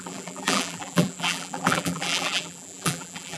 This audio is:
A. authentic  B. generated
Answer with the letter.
B